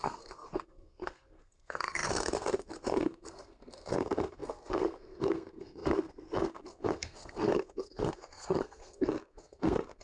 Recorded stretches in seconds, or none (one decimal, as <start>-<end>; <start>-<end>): none